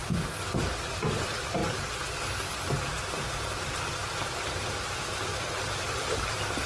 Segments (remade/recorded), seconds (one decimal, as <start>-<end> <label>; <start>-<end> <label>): 0.0-0.6 recorded; 0.6-1.6 remade; 1.6-5.6 recorded; 5.6-6.7 remade